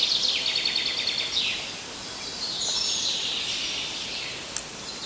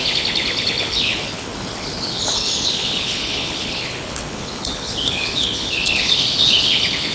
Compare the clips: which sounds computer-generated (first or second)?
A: second